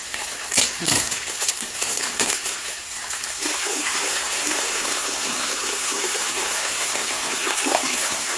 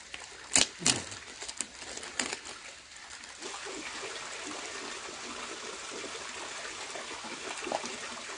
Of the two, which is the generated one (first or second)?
first